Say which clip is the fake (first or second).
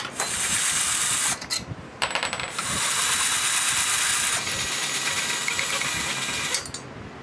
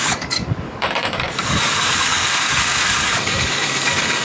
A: second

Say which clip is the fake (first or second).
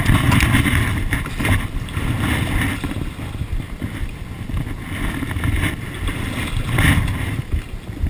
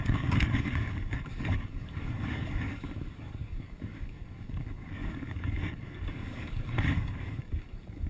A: second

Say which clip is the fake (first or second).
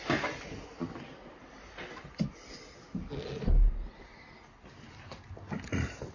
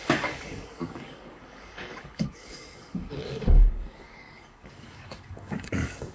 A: second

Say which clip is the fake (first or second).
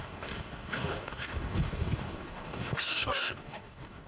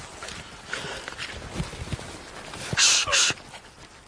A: first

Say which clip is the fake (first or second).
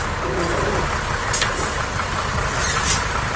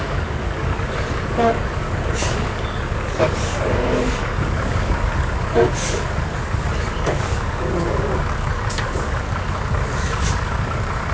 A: second